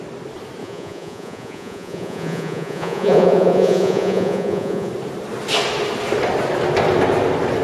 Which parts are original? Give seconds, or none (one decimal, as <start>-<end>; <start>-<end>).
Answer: 0.0-0.6; 4.9-7.6